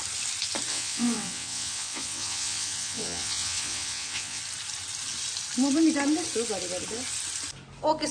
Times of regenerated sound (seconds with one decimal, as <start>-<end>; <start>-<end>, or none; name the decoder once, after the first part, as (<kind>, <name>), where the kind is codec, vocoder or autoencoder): 0.7-4.4 (vocoder, WaveNeXt)